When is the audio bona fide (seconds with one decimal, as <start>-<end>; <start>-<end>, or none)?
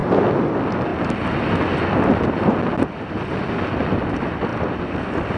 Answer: 0.0-5.4